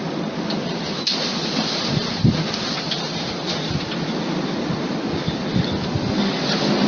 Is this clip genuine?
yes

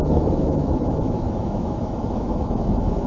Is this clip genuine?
no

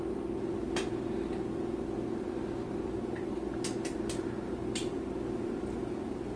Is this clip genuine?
yes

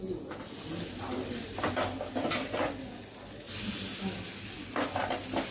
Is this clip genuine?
yes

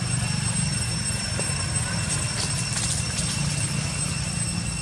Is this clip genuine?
yes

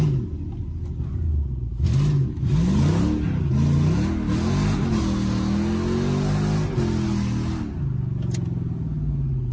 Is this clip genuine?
yes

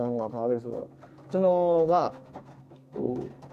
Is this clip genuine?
no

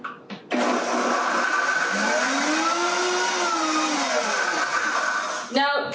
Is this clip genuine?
yes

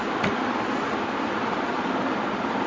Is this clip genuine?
yes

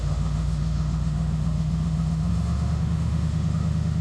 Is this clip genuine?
no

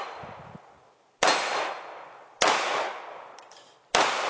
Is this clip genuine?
yes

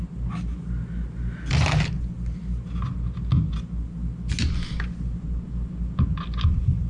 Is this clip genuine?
yes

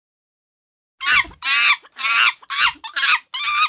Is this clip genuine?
yes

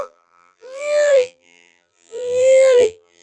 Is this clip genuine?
no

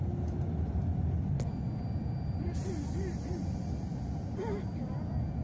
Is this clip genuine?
yes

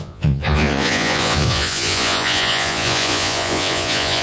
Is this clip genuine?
no